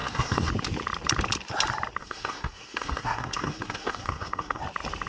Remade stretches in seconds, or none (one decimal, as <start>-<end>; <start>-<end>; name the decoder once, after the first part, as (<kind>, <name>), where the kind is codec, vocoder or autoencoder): 0.0-0.5 (codec, SNAC); 2.0-4.6